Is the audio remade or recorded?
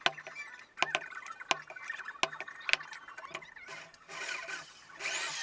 recorded